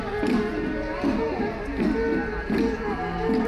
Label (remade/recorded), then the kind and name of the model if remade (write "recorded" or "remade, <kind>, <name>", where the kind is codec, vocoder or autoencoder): recorded